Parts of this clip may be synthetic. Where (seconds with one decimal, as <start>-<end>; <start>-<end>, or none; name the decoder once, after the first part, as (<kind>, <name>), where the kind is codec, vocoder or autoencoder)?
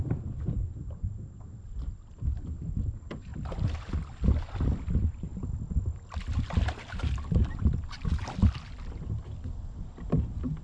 3.3-4.3 (vocoder, BigVGAN v2); 5.3-6.3